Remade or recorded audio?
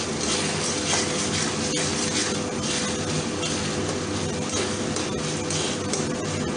recorded